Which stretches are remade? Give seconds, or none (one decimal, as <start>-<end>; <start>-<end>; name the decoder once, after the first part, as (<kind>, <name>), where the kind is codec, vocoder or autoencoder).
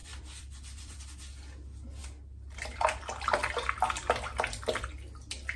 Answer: 0.0-1.0 (vocoder, BigVGAN v2)